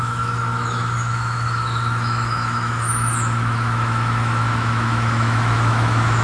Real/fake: fake